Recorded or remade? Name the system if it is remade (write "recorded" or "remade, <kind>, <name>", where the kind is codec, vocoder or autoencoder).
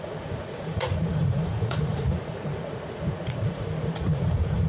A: remade, vocoder, Vocos